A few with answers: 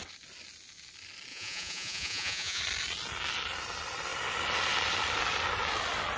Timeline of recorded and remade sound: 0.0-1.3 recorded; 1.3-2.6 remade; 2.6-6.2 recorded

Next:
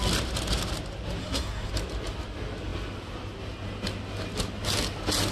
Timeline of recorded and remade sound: 0.0-1.2 recorded; 1.2-1.7 remade; 1.7-5.3 recorded

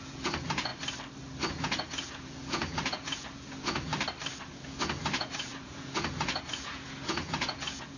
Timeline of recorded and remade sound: 0.0-0.7 remade; 0.7-1.5 recorded; 1.5-3.9 remade; 3.9-4.4 recorded; 4.4-8.0 remade

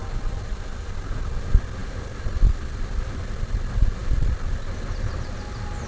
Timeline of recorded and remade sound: 0.0-5.9 recorded

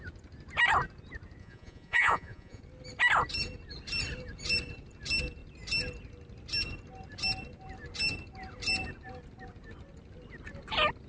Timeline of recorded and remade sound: 0.0-1.4 recorded; 1.4-2.6 remade; 2.6-11.1 recorded

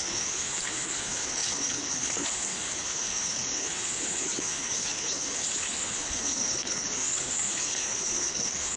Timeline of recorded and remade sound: 0.0-8.8 remade